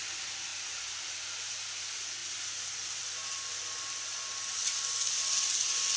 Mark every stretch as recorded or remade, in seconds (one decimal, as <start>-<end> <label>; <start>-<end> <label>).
0.0-2.2 recorded; 2.2-5.3 remade; 5.3-6.0 recorded